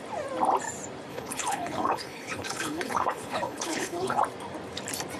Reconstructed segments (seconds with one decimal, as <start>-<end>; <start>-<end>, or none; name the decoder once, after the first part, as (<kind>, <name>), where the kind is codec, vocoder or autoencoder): 1.1-4.2 (codec, HILCodec)

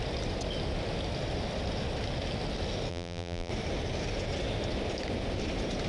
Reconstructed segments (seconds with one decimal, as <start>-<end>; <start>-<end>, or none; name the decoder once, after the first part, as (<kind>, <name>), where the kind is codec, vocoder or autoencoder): 2.9-3.5 (vocoder, BigVGAN v2)

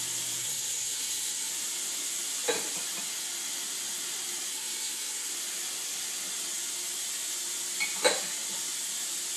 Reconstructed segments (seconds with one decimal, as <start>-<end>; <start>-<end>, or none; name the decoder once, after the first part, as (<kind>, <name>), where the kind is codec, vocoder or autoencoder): 0.4-1.5 (codec, SNAC); 4.5-5.3

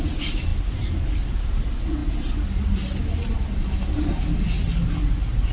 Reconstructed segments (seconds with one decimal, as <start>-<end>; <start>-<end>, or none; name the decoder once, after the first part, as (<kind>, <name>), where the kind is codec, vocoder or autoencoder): none